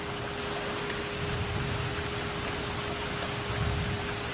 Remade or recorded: recorded